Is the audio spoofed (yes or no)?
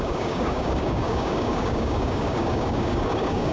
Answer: yes